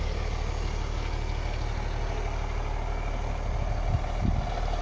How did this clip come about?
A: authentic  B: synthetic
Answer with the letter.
A